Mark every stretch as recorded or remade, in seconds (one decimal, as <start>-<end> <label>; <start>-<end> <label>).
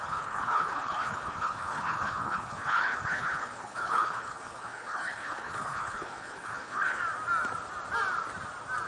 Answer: 0.0-7.0 remade; 7.0-8.9 recorded